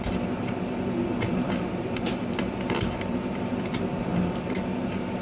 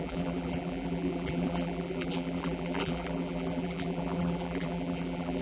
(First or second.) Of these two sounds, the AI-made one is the second